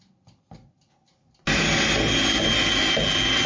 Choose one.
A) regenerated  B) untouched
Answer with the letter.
B